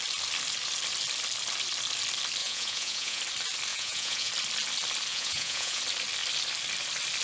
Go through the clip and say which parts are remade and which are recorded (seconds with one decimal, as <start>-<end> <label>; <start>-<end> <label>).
0.0-2.4 recorded; 2.4-3.2 remade; 3.2-3.7 recorded; 3.7-4.3 remade; 4.3-5.1 recorded; 5.1-5.8 remade; 5.8-7.2 recorded